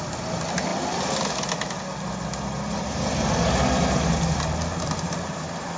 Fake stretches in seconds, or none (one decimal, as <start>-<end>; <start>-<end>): 4.7-5.8